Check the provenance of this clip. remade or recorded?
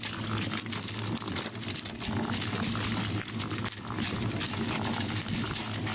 recorded